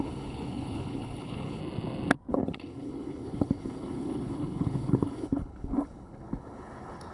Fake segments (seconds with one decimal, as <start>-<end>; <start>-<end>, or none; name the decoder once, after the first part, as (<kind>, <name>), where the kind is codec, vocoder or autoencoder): 0.0-1.6 (codec, HILCodec); 2.3-7.1